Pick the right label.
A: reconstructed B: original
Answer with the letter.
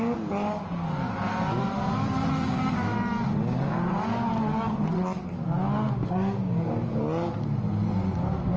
B